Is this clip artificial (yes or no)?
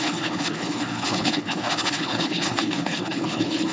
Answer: yes